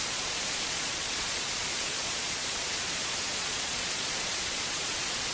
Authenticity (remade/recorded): remade